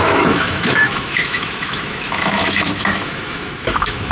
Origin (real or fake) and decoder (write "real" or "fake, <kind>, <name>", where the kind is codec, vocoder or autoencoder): fake, autoencoder, DAC-VAE